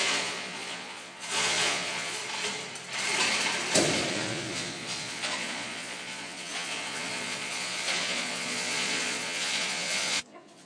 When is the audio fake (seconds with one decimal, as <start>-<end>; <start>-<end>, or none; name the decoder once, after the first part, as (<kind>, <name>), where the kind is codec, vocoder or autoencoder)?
0.0-2.2 (vocoder, Vocos); 4.1-10.7